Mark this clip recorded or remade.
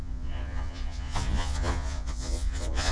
remade